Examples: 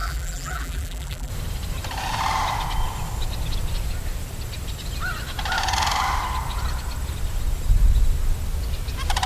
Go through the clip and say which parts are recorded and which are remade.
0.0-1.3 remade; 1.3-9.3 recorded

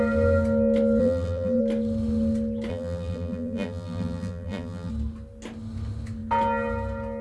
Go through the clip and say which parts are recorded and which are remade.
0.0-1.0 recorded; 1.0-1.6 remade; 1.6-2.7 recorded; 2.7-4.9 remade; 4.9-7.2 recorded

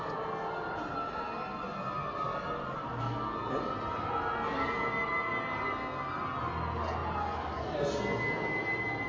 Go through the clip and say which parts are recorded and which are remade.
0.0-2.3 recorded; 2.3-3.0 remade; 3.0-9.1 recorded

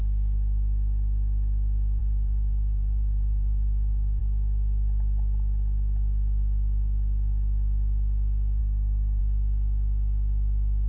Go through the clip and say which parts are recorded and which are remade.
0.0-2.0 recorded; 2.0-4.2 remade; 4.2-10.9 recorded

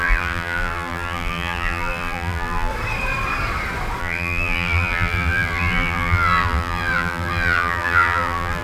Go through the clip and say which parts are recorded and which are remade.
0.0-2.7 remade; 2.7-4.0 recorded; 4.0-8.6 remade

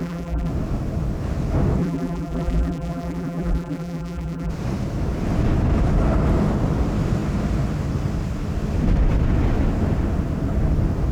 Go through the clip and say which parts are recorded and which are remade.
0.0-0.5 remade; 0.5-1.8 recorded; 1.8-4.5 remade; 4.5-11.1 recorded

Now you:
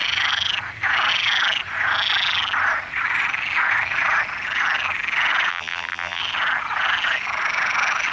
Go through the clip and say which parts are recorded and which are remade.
0.0-5.5 recorded; 5.5-6.2 remade; 6.2-8.1 recorded